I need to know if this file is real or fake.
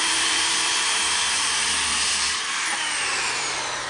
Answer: fake